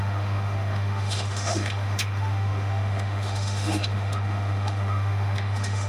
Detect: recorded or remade remade